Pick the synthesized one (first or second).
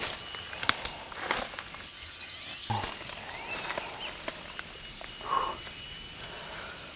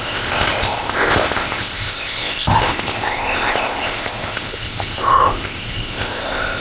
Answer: second